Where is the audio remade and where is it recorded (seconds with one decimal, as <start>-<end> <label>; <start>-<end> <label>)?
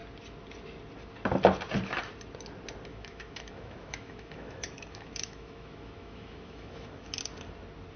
0.0-2.9 recorded; 2.9-7.2 remade; 7.2-8.0 recorded